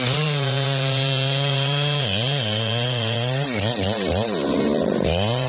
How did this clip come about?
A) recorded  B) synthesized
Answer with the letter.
B